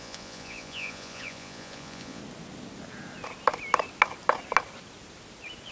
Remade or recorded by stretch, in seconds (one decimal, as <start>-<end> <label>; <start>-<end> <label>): 0.0-2.2 remade; 2.2-5.7 recorded